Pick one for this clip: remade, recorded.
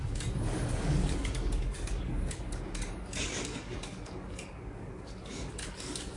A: remade